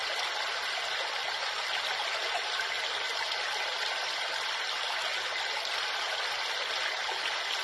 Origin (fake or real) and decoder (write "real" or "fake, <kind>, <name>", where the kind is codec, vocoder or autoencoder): real